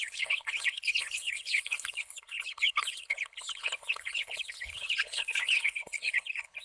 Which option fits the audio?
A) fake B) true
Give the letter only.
A